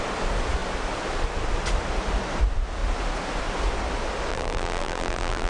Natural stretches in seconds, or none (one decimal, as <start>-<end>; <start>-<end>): 0.0-4.3

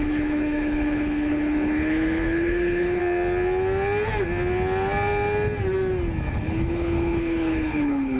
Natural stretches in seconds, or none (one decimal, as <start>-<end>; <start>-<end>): 3.0-6.3

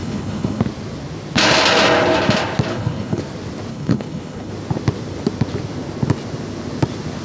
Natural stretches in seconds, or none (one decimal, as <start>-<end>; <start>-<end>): 0.6-2.7; 3.2-3.7; 4.5-7.2

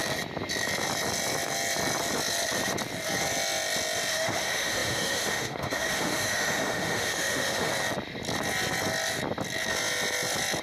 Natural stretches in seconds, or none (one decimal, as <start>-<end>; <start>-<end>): 0.0-4.1; 7.7-10.6